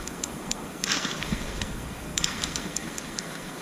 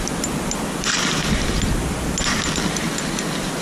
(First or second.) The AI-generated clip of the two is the first